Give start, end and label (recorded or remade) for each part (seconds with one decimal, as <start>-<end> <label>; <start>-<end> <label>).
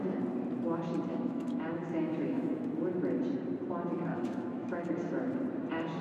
0.0-1.1 recorded; 1.1-2.6 remade; 2.6-4.1 recorded; 4.1-4.9 remade; 4.9-6.0 recorded